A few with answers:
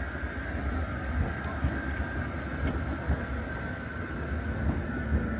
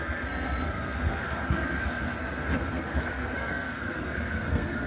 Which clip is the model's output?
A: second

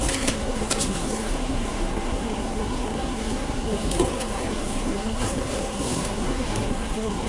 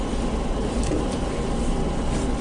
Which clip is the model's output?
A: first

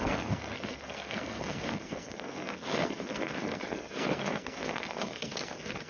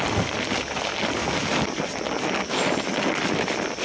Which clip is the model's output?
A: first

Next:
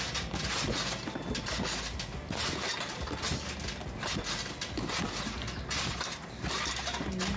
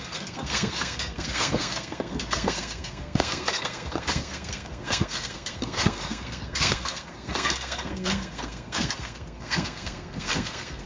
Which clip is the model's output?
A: second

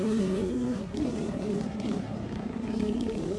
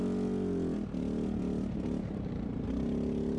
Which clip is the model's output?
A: first